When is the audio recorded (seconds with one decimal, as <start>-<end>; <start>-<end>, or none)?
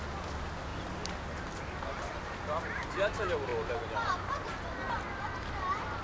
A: 0.0-6.0